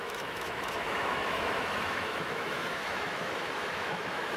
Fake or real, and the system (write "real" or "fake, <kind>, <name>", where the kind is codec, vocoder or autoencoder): fake, autoencoder, DAC-VAE